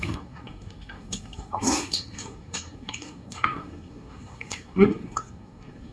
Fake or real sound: fake